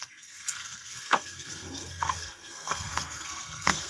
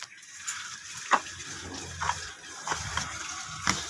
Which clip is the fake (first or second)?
first